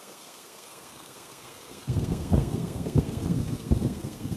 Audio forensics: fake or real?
fake